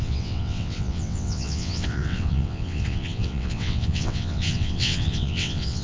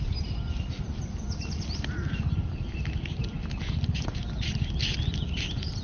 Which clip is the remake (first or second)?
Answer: first